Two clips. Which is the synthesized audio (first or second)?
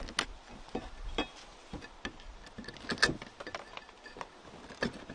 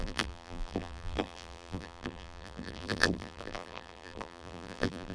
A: second